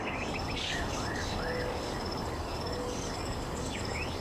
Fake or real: fake